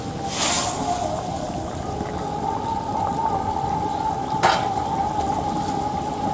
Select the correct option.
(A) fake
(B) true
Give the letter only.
B